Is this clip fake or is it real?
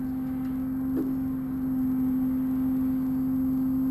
real